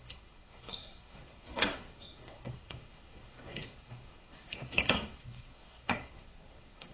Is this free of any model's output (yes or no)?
no